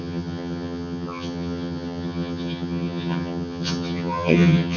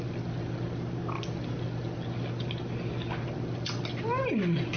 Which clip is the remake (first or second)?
first